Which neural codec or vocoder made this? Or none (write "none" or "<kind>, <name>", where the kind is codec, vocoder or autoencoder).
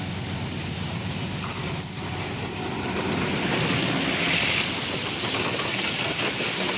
none